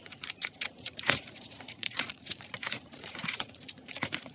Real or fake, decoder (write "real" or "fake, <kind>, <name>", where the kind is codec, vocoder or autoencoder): fake, vocoder, Vocos